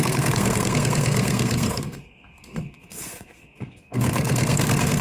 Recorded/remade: remade